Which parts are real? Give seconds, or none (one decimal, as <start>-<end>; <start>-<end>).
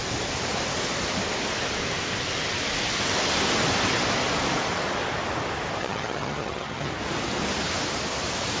0.0-5.8; 6.9-8.6